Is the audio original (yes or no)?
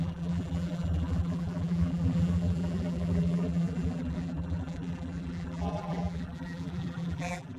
no